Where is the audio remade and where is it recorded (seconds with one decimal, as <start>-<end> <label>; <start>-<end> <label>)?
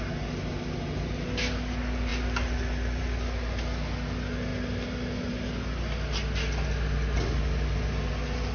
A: 0.0-8.5 recorded